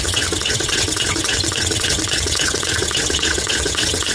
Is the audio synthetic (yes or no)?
yes